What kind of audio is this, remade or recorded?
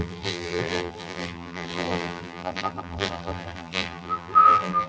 remade